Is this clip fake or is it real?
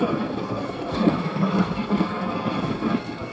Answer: fake